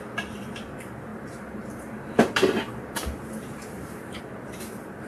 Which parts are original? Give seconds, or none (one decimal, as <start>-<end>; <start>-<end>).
0.0-1.1; 4.2-5.1